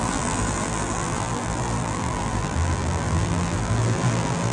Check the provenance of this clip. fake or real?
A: fake